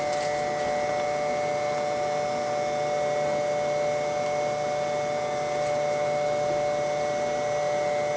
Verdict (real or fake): real